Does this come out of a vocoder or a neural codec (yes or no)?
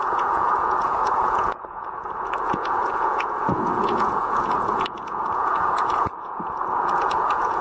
yes